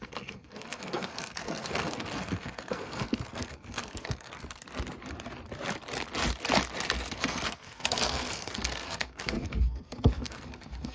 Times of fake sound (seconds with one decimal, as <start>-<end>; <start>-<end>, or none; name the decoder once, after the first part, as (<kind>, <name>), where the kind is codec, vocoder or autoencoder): 0.0-4.6 (codec, SNAC); 7.1-10.9